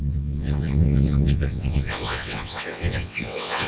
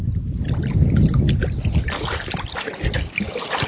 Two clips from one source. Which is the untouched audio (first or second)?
second